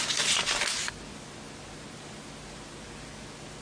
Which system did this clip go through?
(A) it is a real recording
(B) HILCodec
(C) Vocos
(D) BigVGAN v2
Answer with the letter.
A